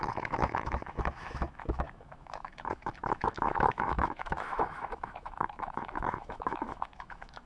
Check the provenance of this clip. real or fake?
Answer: fake